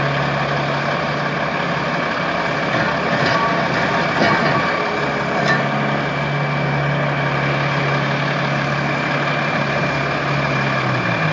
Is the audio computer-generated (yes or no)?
no